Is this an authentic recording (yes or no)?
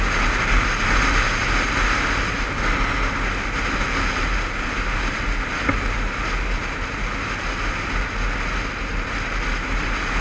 yes